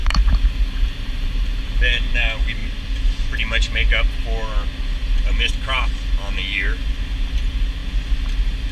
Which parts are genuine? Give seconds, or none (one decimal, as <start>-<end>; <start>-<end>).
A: 1.8-8.7